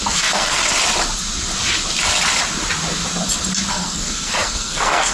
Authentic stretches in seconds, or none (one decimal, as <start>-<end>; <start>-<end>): 0.6-3.7